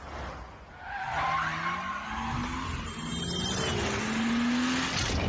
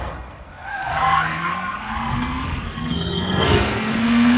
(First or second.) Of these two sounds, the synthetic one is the second